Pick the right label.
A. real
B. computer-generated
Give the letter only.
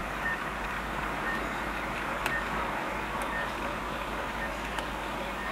B